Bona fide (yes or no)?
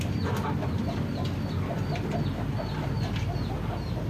yes